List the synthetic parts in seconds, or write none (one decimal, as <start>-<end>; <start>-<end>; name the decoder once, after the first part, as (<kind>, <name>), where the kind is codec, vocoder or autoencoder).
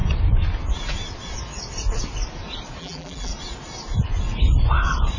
2.8-3.3 (vocoder, BigVGAN v2)